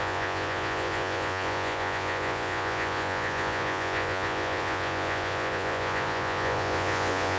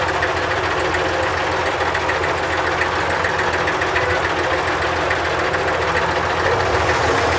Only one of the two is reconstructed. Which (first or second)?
first